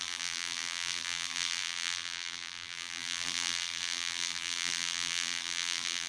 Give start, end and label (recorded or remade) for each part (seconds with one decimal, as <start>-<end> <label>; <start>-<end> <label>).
0.0-6.1 remade